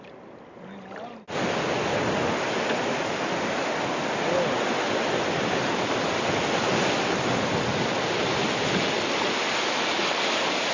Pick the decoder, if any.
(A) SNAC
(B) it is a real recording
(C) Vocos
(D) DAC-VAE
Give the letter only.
B